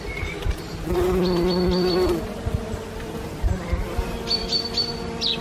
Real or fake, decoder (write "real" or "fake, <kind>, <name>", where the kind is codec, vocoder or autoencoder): real